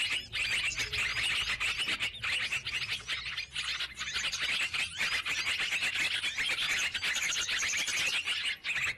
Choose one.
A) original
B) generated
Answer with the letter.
A